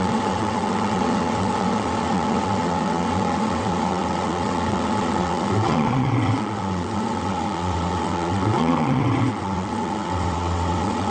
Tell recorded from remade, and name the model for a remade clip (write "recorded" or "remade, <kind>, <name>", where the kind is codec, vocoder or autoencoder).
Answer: remade, vocoder, WaveNeXt